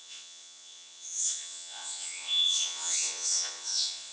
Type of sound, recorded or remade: remade